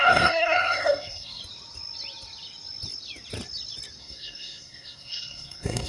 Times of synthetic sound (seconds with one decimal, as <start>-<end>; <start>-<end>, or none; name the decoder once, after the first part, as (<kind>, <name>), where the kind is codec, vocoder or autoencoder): 0.0-1.4 (codec, SNAC); 4.0-5.9